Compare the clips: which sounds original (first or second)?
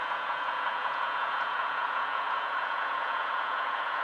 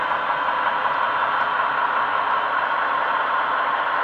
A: second